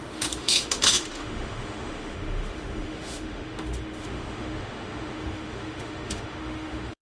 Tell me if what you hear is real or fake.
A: fake